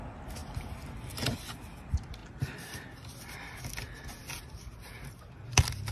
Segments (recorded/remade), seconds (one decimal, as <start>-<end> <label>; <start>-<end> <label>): 0.0-0.4 recorded; 0.4-1.3 remade; 1.3-5.9 recorded